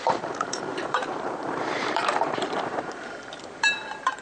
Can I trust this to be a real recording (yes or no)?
no